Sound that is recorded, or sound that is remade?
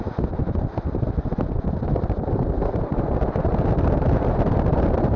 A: recorded